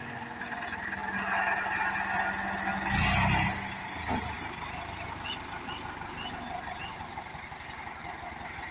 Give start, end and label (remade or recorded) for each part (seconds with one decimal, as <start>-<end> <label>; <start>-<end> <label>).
0.0-8.7 recorded